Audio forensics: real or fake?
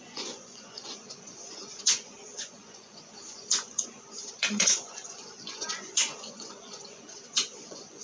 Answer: fake